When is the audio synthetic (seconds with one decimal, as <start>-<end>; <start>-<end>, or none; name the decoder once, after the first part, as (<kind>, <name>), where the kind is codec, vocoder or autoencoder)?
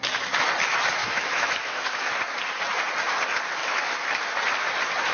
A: 1.0-2.1 (autoencoder, DAC-VAE); 3.6-4.2